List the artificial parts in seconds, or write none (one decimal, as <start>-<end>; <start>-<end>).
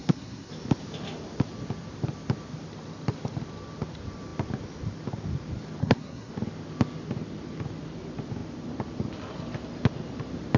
0.0-0.5; 5.8-6.3